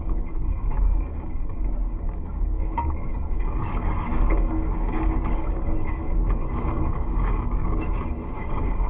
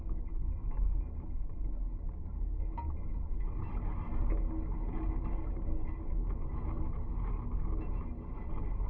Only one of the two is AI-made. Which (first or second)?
first